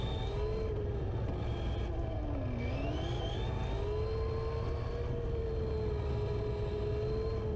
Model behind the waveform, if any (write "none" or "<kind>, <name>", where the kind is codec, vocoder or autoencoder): none